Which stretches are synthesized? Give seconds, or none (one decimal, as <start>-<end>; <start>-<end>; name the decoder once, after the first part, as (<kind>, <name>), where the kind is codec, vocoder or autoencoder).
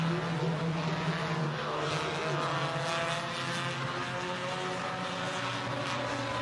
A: 1.4-1.9 (codec, DAC)